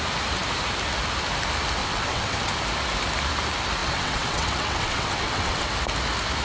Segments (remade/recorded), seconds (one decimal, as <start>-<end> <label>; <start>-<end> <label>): 0.0-1.8 recorded; 1.8-2.5 remade; 2.5-3.8 recorded; 3.8-5.7 remade; 5.7-6.4 recorded